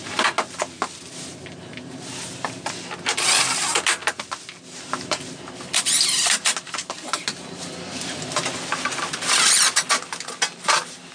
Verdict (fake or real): real